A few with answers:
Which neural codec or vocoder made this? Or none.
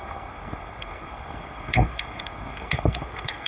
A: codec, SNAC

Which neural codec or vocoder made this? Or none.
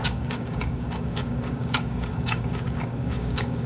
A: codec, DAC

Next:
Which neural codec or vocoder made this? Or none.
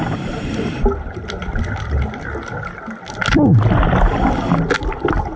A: none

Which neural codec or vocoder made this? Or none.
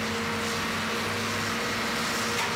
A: none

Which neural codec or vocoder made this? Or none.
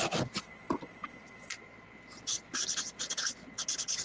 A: none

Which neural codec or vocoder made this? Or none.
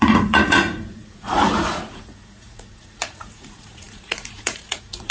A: vocoder, Vocos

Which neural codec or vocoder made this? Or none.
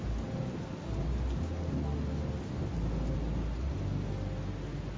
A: none